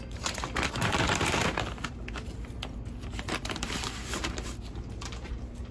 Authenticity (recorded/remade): remade